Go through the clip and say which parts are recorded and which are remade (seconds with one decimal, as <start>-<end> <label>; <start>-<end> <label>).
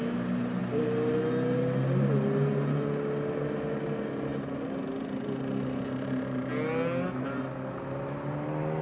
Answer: 0.0-8.8 recorded